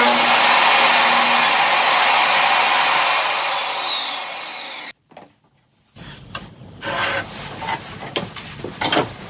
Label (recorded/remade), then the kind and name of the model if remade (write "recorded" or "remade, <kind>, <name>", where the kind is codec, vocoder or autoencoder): recorded